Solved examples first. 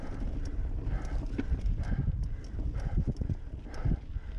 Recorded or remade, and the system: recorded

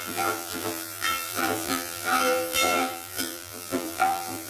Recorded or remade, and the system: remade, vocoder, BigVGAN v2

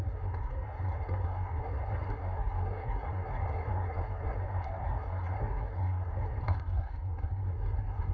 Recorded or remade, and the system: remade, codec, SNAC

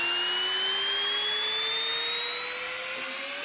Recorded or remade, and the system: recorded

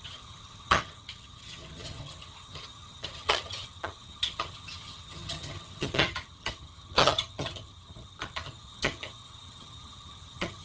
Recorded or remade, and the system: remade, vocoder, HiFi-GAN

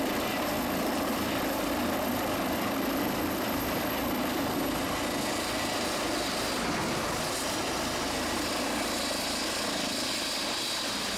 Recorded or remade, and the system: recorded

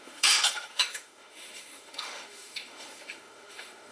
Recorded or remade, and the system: remade, autoencoder, DAC-VAE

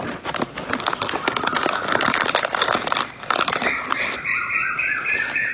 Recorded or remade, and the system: recorded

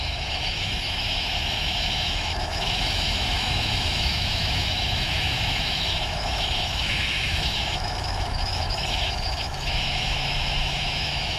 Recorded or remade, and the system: remade, autoencoder, DAC-VAE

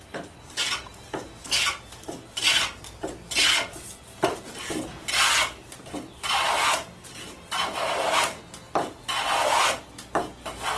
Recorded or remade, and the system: recorded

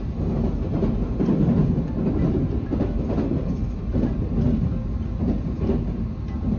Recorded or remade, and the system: recorded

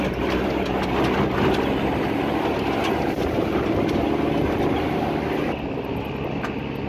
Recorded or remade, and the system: recorded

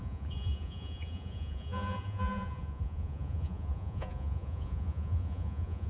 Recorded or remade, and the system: remade, vocoder, Vocos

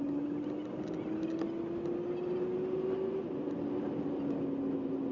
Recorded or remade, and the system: recorded